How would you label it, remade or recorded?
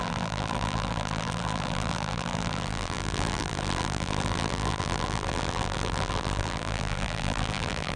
remade